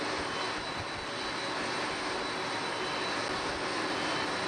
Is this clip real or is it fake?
real